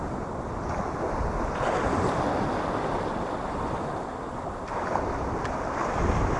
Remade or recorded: recorded